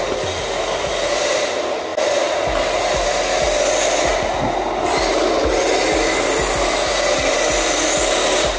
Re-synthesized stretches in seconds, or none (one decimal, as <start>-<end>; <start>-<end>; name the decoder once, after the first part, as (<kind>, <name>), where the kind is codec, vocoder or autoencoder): none